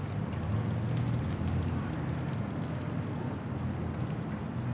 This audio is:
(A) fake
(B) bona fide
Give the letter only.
B